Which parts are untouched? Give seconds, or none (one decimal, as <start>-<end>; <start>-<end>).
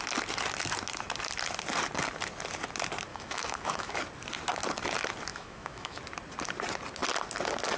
0.0-3.1; 4.0-5.3; 6.0-7.8